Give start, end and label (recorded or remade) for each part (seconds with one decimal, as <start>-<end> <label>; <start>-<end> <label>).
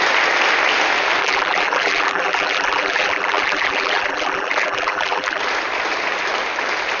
0.0-1.2 recorded; 1.2-5.4 remade; 5.4-7.0 recorded